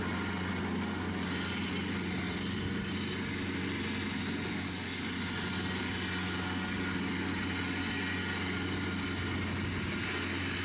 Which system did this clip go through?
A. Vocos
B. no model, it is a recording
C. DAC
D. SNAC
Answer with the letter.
B